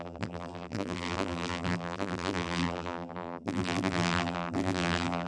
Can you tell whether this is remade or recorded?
remade